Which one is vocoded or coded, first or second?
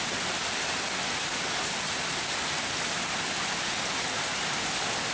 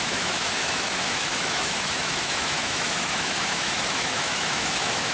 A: second